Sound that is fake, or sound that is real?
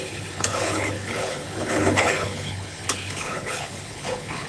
fake